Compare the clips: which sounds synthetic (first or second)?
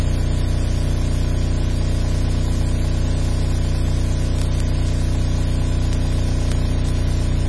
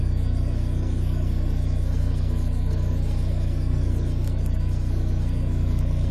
second